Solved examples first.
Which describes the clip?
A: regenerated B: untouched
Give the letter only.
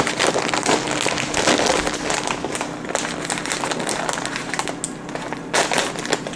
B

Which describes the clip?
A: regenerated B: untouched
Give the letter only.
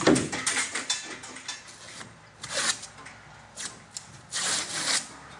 B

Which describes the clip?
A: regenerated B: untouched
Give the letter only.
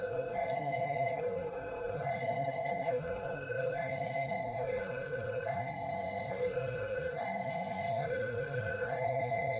A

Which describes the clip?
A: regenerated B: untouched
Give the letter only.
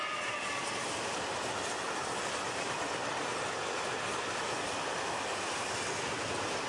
B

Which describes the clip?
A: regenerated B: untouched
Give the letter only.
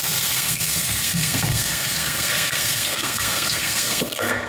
A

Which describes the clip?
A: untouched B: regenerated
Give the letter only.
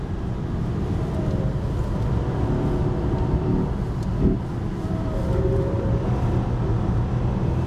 A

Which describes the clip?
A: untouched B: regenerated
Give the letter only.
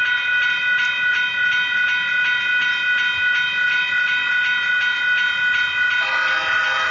A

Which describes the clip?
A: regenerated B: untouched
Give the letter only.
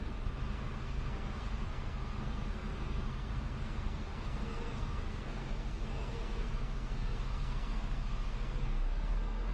A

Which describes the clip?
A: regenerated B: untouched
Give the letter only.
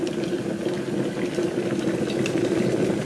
B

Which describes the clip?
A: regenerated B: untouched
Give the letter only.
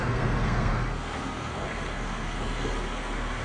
A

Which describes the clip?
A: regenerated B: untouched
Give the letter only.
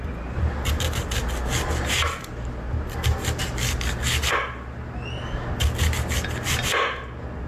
B